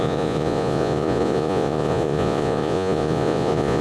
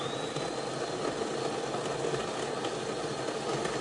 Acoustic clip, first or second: second